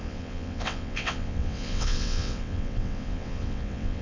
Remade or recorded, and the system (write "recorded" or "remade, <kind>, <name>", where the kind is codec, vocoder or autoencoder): remade, vocoder, WaveNeXt